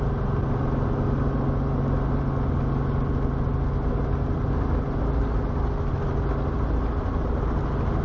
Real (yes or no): yes